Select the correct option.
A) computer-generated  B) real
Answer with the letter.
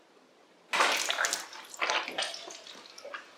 B